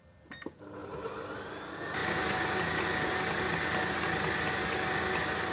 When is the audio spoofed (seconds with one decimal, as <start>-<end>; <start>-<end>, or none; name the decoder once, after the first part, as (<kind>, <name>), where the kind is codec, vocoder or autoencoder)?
none